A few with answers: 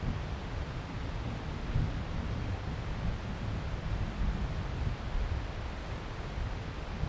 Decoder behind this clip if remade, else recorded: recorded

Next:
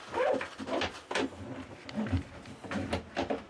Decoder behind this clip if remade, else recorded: recorded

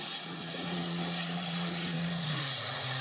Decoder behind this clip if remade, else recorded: remade, vocoder, Vocos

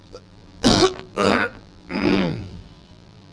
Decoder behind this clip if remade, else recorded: remade, vocoder, BigVGAN v2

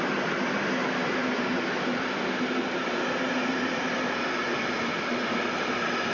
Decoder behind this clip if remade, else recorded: recorded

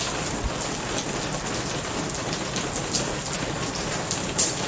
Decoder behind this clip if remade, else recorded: recorded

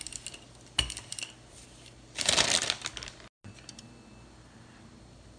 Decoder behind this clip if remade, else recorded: recorded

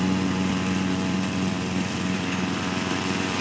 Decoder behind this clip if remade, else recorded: remade, vocoder, BigVGAN v2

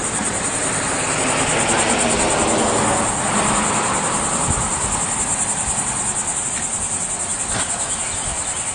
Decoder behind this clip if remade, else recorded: recorded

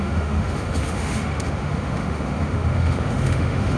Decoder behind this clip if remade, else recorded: remade, autoencoder, DAC-VAE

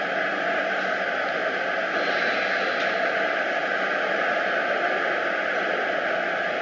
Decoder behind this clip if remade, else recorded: recorded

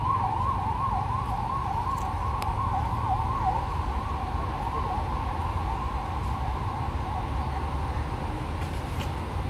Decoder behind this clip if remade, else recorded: recorded